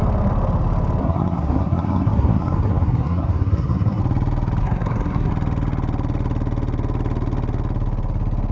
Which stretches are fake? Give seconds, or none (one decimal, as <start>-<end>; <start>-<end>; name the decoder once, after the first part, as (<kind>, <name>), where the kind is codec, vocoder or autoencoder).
1.0-4.0 (codec, SNAC); 4.6-5.3